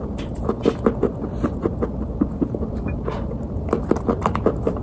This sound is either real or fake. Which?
real